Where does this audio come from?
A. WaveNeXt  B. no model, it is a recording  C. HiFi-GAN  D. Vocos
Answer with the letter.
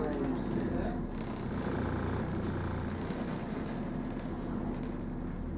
B